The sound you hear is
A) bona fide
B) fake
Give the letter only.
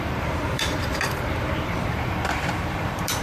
B